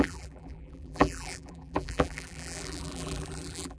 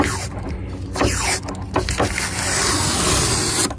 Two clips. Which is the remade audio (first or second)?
first